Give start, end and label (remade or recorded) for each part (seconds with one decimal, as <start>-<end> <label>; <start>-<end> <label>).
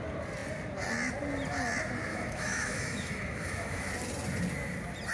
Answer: 0.0-2.1 recorded; 2.1-3.9 remade; 3.9-5.1 recorded